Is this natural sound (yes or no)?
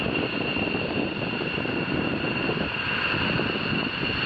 yes